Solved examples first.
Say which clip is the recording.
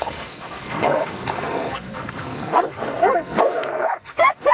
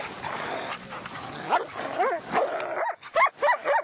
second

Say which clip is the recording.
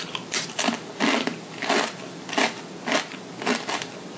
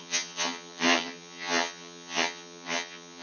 first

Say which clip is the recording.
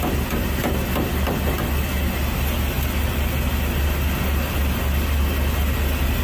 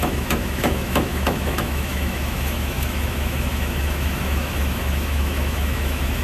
first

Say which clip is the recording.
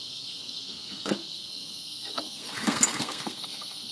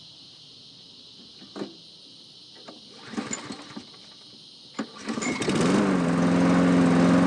second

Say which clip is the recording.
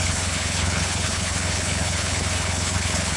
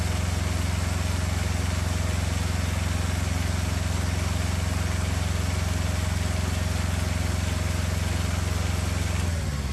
second